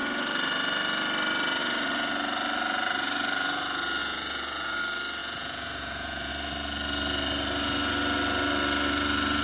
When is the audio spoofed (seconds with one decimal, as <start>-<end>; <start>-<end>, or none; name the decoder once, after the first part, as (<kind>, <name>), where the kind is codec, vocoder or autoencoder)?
4.0-4.8 (vocoder, Vocos); 5.2-6.3